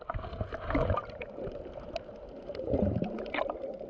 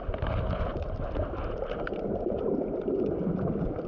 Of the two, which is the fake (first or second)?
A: second